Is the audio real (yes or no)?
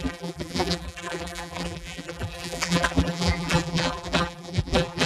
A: no